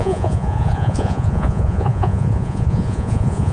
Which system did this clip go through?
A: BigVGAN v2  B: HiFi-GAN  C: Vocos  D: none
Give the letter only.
C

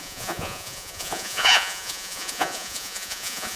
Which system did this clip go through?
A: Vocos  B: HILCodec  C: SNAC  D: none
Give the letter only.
A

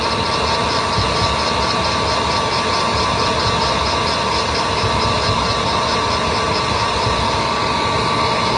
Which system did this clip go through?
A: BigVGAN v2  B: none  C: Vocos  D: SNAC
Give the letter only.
B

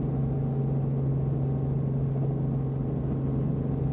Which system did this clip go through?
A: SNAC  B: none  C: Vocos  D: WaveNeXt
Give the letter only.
B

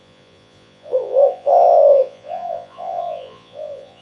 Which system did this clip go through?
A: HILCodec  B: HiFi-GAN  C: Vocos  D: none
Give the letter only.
C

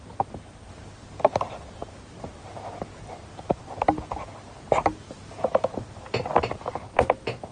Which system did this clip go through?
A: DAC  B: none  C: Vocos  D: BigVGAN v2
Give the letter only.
B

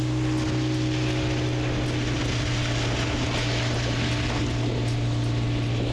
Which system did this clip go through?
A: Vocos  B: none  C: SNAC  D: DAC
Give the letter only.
B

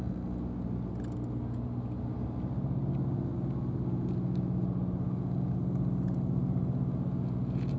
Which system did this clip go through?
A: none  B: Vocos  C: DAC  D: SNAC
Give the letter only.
A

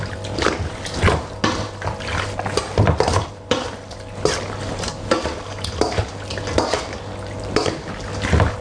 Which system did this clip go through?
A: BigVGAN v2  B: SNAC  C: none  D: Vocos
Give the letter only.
C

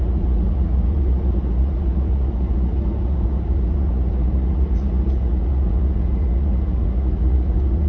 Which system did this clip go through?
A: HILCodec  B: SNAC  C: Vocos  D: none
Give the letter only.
C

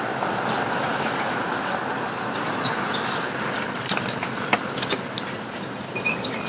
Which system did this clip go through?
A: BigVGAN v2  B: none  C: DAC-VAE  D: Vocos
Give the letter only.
B